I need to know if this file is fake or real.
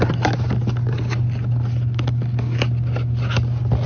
real